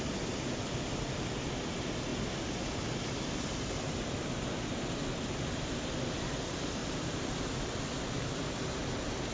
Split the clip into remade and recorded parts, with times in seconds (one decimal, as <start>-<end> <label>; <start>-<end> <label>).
0.0-6.8 recorded; 6.8-7.3 remade; 7.3-9.3 recorded